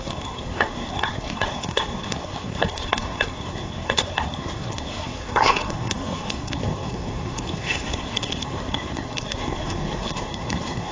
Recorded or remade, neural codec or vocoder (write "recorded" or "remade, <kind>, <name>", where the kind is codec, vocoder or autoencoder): remade, codec, SNAC